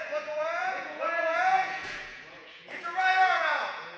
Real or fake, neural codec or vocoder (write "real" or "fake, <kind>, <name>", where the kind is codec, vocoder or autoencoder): fake, vocoder, Vocos